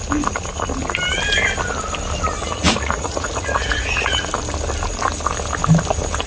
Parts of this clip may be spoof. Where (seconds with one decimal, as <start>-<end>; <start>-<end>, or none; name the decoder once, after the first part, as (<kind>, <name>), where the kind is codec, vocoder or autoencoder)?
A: 2.4-4.3 (vocoder, Vocos)